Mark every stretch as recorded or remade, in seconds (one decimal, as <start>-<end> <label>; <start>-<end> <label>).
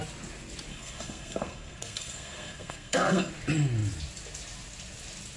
0.0-0.7 recorded; 0.7-3.3 remade; 3.3-5.4 recorded